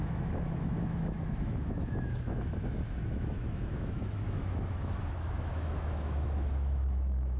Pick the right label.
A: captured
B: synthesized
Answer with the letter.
B